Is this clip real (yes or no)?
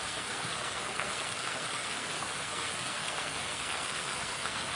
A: no